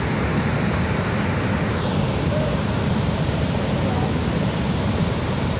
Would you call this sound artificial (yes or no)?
no